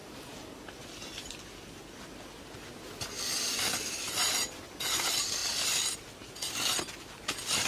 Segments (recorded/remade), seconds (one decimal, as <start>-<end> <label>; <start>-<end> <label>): 0.0-7.7 recorded